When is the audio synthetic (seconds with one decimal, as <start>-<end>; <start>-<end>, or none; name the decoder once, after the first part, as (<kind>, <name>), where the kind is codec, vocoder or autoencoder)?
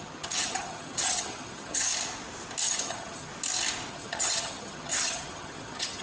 0.0-1.9 (vocoder, HiFi-GAN); 2.6-3.3; 3.9-6.0